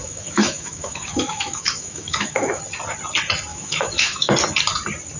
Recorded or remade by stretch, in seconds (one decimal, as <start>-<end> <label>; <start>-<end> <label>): 0.0-2.6 remade; 2.6-3.5 recorded; 3.5-4.3 remade; 4.3-5.2 recorded